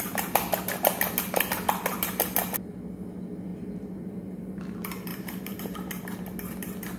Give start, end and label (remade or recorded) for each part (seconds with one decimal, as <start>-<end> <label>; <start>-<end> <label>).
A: 0.0-3.5 recorded; 3.5-4.6 remade; 4.6-5.1 recorded; 5.1-5.6 remade; 5.6-7.0 recorded